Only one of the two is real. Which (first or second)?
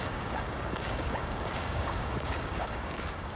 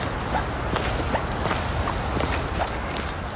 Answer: second